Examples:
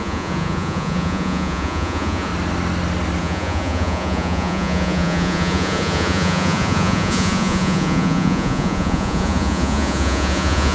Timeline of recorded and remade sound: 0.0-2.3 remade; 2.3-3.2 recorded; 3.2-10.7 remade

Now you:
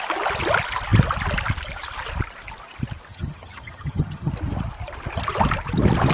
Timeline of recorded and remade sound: 0.0-3.1 recorded; 3.1-4.3 remade; 4.3-6.1 recorded

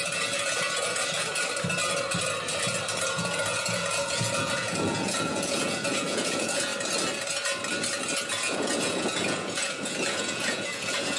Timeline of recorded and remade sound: 0.0-1.4 remade; 1.4-3.0 recorded; 3.0-6.7 remade; 6.7-8.3 recorded; 8.3-11.2 remade

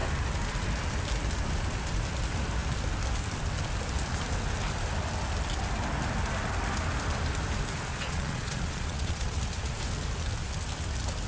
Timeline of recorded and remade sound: 0.0-7.9 recorded; 7.9-9.4 remade; 9.4-11.3 recorded